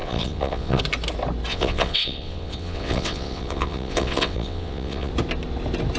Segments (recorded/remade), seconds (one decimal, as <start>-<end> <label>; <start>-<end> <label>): 0.0-0.8 remade; 0.8-1.5 recorded; 1.5-5.1 remade; 5.1-6.0 recorded